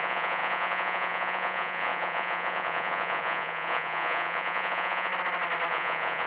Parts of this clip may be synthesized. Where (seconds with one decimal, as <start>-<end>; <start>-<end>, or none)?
0.0-5.1; 5.7-6.3